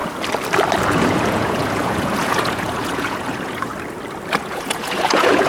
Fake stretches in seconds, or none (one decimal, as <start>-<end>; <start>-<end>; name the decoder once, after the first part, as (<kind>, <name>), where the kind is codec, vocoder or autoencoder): 0.9-3.7 (vocoder, Vocos); 4.4-5.5

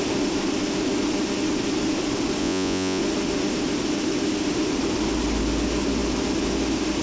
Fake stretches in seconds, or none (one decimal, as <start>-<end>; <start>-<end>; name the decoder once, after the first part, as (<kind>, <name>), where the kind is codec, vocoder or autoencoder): 2.4-3.0 (vocoder, Vocos)

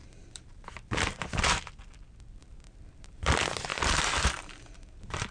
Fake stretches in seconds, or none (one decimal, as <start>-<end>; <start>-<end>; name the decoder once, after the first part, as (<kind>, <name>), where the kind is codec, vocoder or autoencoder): 0.0-1.2 (vocoder, BigVGAN v2); 2.4-3.3; 3.7-4.3

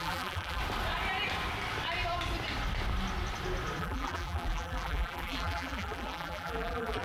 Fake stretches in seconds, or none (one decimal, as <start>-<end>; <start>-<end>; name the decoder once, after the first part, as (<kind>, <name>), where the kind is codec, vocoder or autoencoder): 0.0-0.6 (vocoder, BigVGAN v2); 3.8-7.0

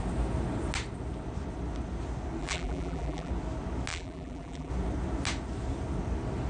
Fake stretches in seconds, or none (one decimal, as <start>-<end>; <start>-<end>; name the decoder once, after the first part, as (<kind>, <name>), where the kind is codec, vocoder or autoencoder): 2.4-3.3 (vocoder, BigVGAN v2); 3.9-4.7

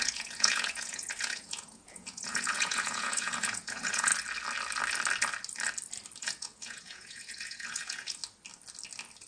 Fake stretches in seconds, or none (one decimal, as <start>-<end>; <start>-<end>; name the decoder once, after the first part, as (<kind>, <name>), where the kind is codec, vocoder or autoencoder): 0.0-4.1 (vocoder, Vocos); 6.2-8.2

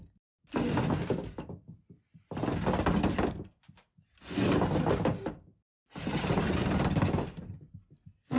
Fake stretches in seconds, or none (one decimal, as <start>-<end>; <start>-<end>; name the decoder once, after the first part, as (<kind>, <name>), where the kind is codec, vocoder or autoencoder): none

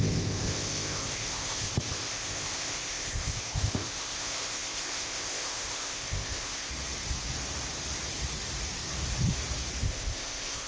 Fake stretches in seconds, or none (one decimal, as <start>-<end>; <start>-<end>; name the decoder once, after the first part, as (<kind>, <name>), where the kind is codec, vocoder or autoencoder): 0.0-6.7 (codec, ZipCodec); 9.8-10.7